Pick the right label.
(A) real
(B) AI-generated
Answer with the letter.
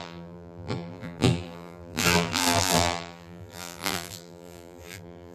B